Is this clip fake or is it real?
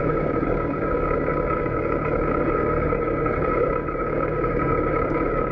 fake